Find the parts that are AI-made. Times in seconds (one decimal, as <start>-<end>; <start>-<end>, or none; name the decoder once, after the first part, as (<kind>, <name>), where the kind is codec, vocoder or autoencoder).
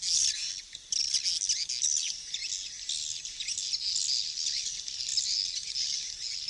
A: none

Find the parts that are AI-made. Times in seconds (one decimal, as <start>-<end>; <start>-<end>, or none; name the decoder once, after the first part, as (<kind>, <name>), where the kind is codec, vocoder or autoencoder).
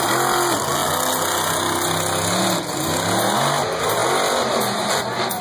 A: none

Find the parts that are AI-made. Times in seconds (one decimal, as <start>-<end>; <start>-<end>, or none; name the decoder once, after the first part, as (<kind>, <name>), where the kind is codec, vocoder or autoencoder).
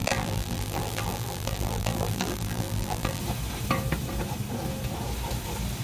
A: 0.0-3.2 (vocoder, BigVGAN v2)